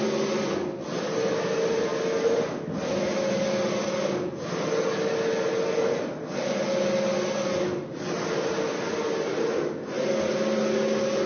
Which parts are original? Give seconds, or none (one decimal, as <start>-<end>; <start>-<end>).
0.0-11.3